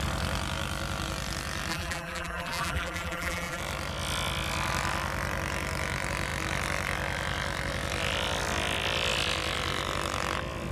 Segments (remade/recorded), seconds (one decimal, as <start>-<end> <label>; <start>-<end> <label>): 0.0-1.7 recorded; 1.7-3.6 remade; 3.6-10.7 recorded